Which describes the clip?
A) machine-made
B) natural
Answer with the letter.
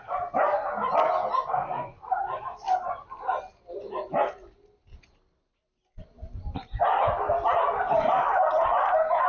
B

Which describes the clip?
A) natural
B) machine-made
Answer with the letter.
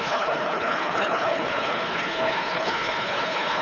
B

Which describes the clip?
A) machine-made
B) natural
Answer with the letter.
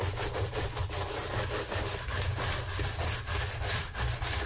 B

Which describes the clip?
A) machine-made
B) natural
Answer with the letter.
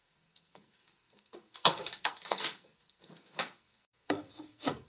A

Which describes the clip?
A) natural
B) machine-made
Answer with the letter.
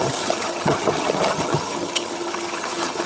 B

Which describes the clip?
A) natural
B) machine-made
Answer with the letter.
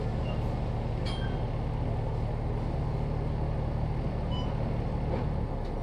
A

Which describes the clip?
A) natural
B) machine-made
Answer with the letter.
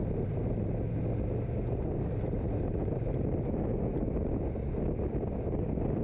A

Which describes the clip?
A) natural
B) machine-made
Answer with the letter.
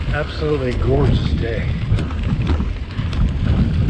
A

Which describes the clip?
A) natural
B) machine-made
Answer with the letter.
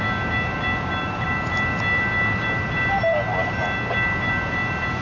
A